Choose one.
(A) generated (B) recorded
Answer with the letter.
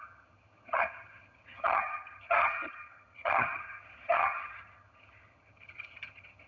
A